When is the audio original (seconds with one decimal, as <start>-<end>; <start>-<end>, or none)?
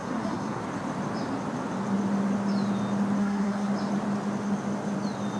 0.6-3.2; 3.7-5.4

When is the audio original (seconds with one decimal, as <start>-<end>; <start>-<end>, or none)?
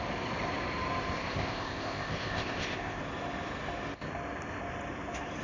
0.0-1.2; 3.0-5.4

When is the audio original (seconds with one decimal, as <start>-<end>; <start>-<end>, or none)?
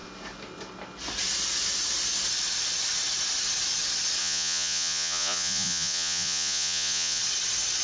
0.0-4.2; 7.2-7.8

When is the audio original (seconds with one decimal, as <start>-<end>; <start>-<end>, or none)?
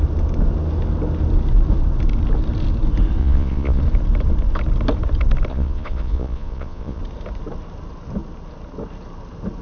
0.0-3.2; 3.8-5.5; 7.0-9.6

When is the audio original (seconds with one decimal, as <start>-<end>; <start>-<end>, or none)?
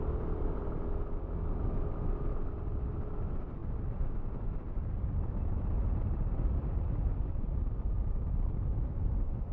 0.0-9.5